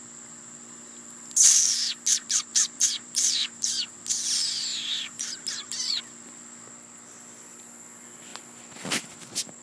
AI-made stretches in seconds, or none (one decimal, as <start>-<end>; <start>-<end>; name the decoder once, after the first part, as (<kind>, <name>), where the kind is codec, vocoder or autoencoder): 2.1-4.0 (vocoder, BigVGAN v2); 4.7-6.0